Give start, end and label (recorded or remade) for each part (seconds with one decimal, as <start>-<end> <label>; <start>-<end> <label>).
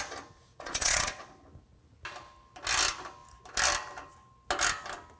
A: 0.0-0.5 recorded; 0.5-1.3 remade; 1.3-5.2 recorded